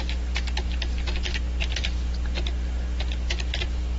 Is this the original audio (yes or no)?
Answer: yes